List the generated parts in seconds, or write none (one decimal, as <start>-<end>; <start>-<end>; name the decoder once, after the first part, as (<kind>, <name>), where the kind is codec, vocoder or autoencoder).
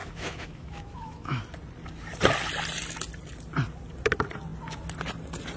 0.0-1.4 (autoencoder, DAC-VAE)